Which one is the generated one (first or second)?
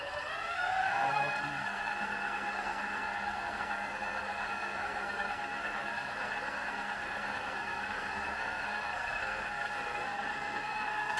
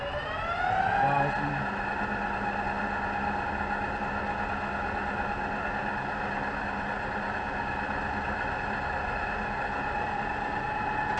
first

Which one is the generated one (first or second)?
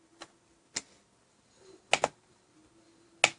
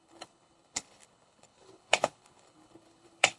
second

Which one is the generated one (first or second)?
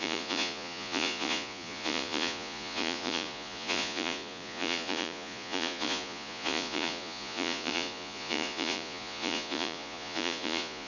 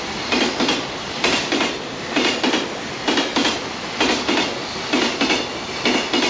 first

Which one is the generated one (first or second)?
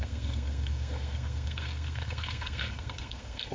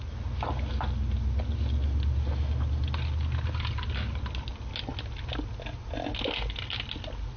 first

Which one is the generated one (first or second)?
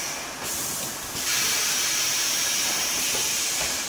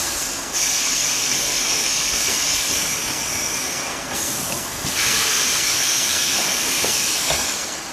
second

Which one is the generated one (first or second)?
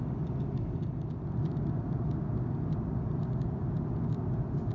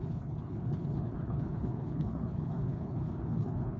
second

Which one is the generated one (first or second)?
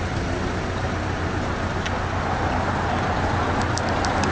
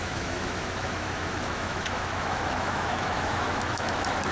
second